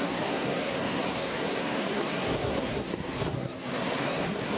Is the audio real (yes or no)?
no